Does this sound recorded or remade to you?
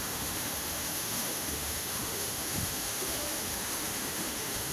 remade